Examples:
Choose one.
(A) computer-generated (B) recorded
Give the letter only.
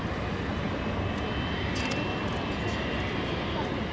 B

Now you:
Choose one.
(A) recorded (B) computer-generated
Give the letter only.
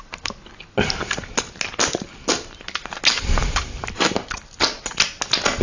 A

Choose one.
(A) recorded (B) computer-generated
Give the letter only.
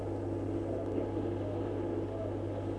A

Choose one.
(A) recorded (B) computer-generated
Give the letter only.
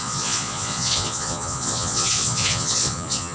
B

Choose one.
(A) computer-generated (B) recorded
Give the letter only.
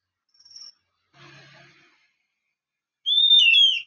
B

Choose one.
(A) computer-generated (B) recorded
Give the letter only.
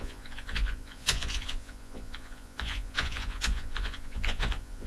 A